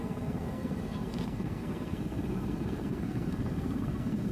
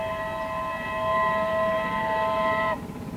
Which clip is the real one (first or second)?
second